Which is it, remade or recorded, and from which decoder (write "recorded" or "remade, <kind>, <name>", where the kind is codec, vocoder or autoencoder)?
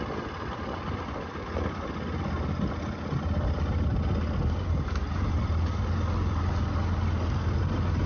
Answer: recorded